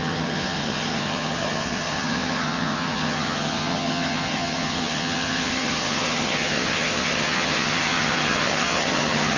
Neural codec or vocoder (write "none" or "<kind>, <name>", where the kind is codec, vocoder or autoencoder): vocoder, HiFi-GAN